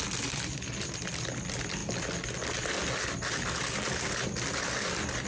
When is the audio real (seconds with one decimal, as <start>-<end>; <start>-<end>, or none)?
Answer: 0.0-5.3

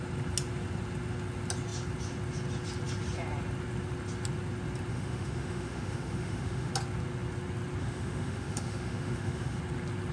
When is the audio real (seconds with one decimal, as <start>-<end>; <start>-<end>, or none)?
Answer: 0.0-4.9; 6.7-7.8; 9.6-10.1

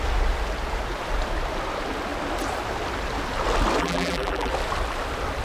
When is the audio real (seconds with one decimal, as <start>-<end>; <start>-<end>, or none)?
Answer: 0.0-3.8; 4.5-5.4

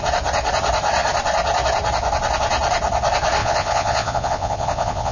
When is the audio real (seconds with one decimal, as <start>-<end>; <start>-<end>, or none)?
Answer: 0.0-3.4